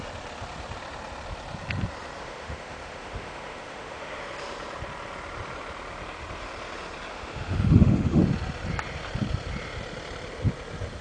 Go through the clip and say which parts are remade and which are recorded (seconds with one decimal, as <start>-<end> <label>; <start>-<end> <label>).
0.0-2.2 recorded; 2.2-4.2 remade; 4.2-7.1 recorded; 7.1-8.2 remade; 8.2-11.0 recorded